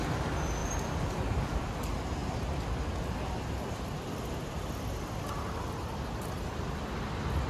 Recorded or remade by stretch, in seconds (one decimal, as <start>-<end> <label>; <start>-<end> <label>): 0.0-7.5 recorded